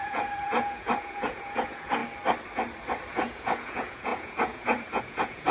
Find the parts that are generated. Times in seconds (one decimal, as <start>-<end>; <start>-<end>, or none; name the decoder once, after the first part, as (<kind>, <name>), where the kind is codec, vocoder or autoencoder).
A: 0.0-2.0 (vocoder, Vocos); 3.1-5.5